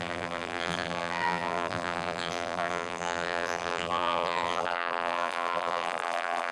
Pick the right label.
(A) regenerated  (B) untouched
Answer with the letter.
A